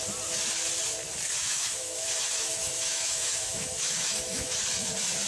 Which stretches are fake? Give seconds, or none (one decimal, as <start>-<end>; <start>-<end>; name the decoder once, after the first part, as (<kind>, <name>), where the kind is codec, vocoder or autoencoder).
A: 1.4-4.6 (autoencoder, DAC-VAE)